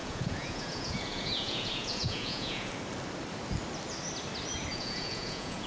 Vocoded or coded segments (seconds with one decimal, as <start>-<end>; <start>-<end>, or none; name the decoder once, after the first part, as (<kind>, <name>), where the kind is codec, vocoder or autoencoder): 0.0-2.7 (vocoder, Vocos); 4.7-5.7